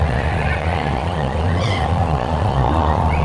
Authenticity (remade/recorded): remade